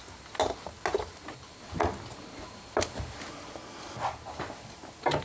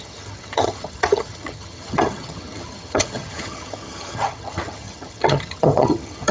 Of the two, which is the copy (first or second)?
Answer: second